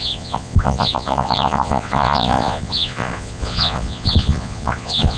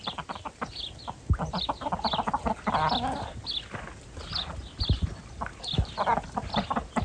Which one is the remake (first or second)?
first